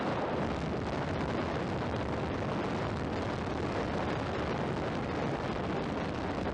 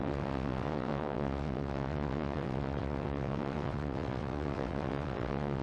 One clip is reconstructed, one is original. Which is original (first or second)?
first